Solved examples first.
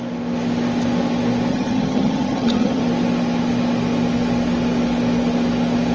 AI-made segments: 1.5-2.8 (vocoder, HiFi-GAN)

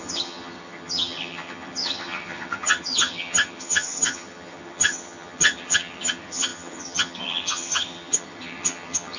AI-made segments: 0.0-9.2 (vocoder, HiFi-GAN)

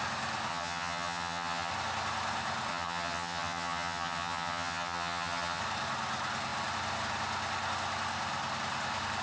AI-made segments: 0.5-1.7 (vocoder, HiFi-GAN); 2.7-5.6